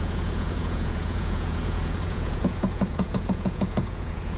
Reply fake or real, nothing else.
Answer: fake